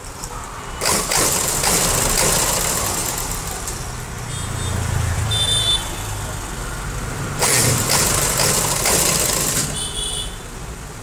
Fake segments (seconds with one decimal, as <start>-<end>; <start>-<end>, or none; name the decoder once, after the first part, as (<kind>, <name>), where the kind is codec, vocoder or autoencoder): none